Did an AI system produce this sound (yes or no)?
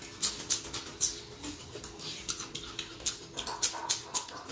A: no